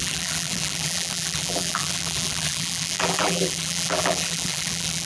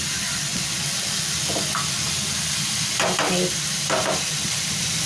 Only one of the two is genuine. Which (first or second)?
second